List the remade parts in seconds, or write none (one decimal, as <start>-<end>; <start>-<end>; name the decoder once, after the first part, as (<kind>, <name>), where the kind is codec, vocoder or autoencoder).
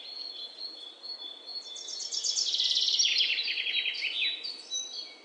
none